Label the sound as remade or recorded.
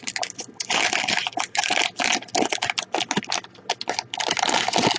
recorded